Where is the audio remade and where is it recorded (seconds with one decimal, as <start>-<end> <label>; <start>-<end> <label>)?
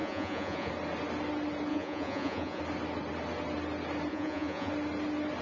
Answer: 0.0-0.7 remade; 0.7-1.7 recorded; 1.7-2.6 remade; 2.6-4.1 recorded; 4.1-4.7 remade; 4.7-5.4 recorded